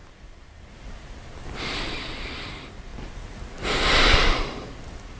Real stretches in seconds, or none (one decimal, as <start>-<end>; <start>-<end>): 0.0-5.2